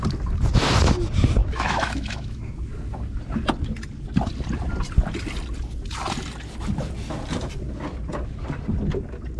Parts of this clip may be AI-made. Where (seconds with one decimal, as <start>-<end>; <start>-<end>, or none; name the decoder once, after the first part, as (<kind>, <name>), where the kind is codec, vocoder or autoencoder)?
1.4-2.4 (autoencoder, DAC-VAE)